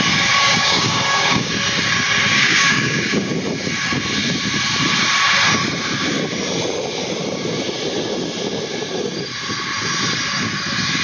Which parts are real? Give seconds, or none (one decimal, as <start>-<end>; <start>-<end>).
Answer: 0.0-0.4; 1.5-2.3; 3.3-11.0